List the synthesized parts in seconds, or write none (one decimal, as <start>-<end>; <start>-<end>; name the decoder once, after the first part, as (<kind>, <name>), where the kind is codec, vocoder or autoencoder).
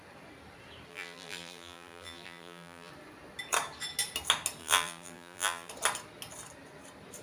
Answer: 0.9-2.9 (vocoder, BigVGAN v2); 4.6-5.7